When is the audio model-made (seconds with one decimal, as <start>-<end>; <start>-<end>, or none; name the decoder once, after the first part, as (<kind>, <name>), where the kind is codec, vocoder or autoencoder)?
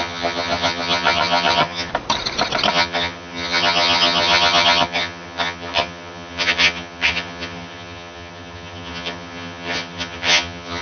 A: 0.0-1.9 (vocoder, HiFi-GAN); 2.7-10.8